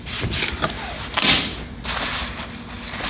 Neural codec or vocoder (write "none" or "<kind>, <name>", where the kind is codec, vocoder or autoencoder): none